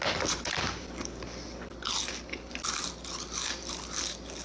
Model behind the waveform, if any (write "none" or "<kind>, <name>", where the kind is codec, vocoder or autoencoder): none